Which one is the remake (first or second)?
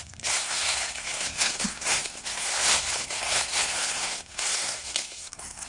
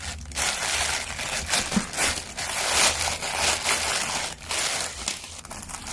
first